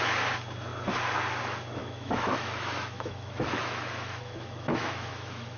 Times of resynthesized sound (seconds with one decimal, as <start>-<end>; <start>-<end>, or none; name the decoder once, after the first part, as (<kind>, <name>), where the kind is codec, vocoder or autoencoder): 1.8-5.6 (autoencoder, DAC-VAE)